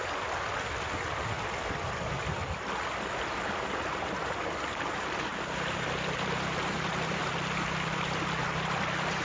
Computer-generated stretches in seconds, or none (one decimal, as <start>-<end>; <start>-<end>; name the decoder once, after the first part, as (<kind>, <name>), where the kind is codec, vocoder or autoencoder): 2.4-4.4 (vocoder, BigVGAN v2); 5.3-7.2